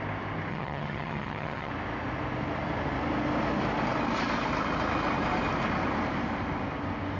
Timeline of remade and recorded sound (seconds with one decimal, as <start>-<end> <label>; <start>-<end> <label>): 0.0-0.5 recorded; 0.5-1.7 remade; 1.7-7.2 recorded